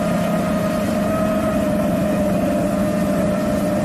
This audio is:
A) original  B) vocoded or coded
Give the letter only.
A